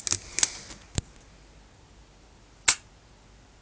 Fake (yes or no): no